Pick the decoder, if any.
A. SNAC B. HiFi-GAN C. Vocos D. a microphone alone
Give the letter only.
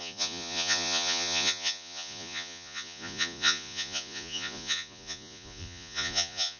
C